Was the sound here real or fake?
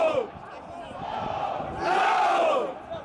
real